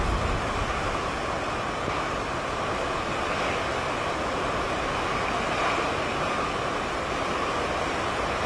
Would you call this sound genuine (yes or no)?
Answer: yes